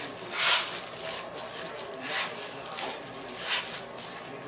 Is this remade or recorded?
recorded